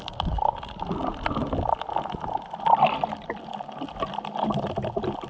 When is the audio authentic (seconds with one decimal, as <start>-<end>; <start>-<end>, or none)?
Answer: 0.0-5.3